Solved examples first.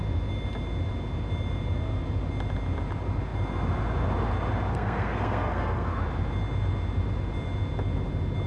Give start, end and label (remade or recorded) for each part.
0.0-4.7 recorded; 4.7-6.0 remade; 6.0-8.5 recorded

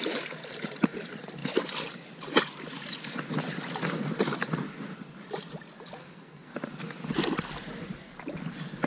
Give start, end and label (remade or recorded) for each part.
0.0-6.0 recorded; 6.0-6.5 remade; 6.5-8.9 recorded